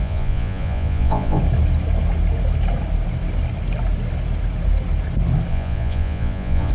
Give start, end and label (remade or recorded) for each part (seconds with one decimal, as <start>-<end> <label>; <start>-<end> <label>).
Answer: 0.0-1.4 remade; 1.4-5.5 recorded; 5.5-6.7 remade